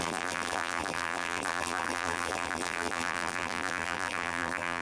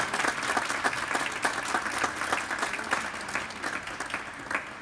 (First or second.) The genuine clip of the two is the second